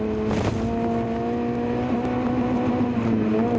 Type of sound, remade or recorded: recorded